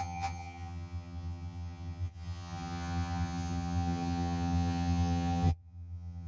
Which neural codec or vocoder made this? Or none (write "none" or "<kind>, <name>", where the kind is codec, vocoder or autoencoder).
vocoder, HiFi-GAN